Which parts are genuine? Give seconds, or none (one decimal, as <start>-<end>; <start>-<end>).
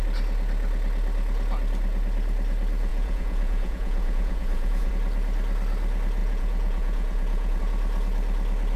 0.0-2.9; 4.9-6.2; 7.6-8.8